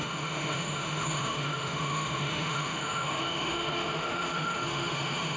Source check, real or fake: fake